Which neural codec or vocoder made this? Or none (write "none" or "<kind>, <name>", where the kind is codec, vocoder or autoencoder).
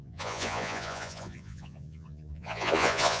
vocoder, Vocos